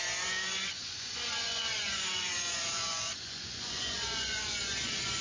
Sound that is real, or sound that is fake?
fake